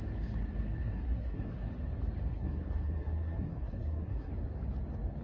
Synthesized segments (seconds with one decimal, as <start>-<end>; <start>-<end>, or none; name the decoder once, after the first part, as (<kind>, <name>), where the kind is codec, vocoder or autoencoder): 0.8-1.7 (codec, SNAC); 2.3-4.3